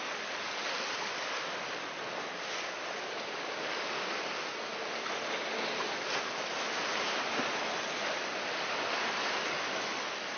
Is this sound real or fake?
real